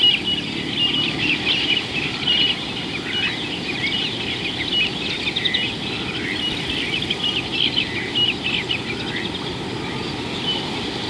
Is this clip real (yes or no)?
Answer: yes